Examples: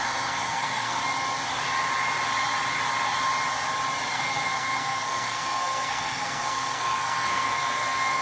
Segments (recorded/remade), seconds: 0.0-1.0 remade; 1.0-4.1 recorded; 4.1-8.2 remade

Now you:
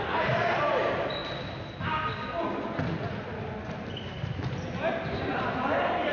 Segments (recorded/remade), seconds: 0.0-1.2 remade; 1.2-4.9 recorded; 4.9-6.1 remade

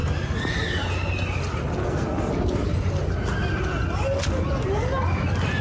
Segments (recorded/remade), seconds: 0.0-1.8 recorded; 1.8-2.3 remade; 2.3-5.6 recorded

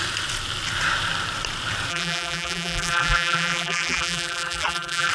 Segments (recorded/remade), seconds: 0.0-1.9 recorded; 1.9-5.1 remade

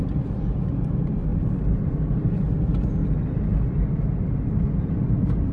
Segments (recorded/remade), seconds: 0.0-5.5 recorded

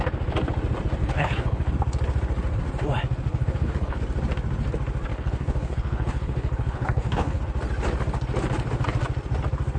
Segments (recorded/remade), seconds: 0.0-1.0 recorded; 1.0-1.7 remade; 1.7-3.3 recorded; 3.3-4.0 remade; 4.0-5.1 recorded; 5.1-7.4 remade; 7.4-9.8 recorded

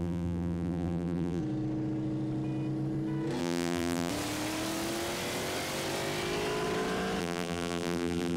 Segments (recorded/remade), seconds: 0.0-1.4 remade; 1.4-3.4 recorded; 3.4-4.1 remade; 4.1-7.2 recorded; 7.2-8.4 remade

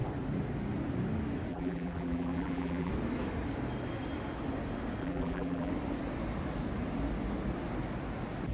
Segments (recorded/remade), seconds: 0.0-1.5 recorded; 1.5-2.9 remade; 2.9-5.0 recorded; 5.0-5.7 remade; 5.7-8.5 recorded